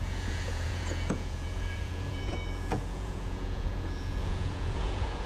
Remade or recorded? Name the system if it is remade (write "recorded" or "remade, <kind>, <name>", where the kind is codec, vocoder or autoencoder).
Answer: remade, vocoder, Vocos